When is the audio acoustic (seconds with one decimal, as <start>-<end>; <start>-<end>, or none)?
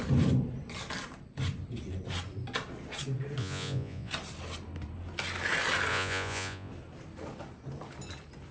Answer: 0.0-3.4; 4.1-5.9; 6.7-8.5